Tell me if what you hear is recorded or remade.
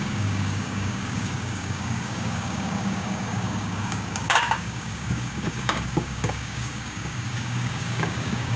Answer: remade